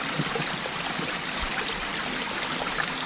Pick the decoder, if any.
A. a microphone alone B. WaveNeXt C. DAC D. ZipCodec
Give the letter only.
A